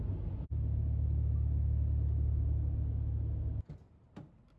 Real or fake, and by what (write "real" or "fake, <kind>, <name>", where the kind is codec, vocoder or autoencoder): real